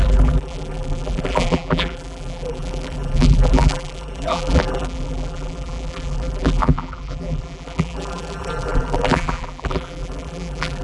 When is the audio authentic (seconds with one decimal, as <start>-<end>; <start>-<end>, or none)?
none